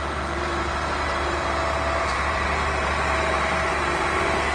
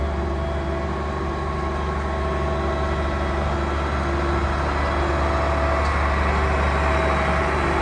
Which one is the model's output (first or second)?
first